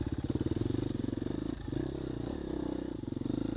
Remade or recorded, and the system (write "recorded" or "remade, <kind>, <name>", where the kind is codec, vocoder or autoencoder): recorded